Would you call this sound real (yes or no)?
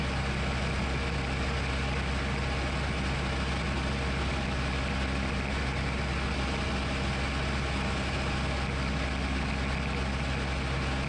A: yes